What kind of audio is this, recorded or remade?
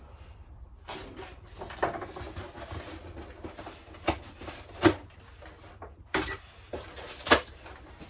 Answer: recorded